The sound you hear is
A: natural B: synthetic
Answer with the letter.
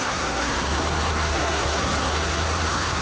B